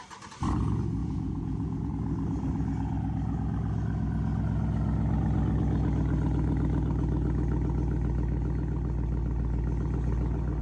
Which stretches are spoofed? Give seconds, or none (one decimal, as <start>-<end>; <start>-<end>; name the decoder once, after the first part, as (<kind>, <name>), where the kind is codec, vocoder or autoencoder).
1.0-1.9 (vocoder, Vocos)